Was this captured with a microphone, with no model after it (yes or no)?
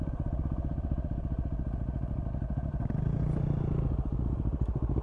yes